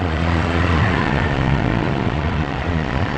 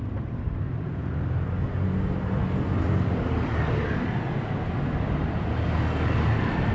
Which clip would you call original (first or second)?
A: second